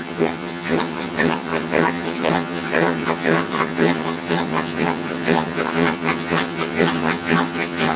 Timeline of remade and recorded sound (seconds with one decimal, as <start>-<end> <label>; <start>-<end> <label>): 0.0-8.0 remade